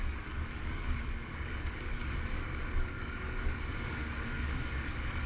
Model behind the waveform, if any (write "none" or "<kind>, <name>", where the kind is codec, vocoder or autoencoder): codec, DAC